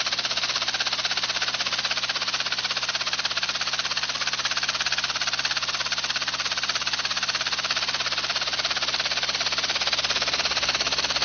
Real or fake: real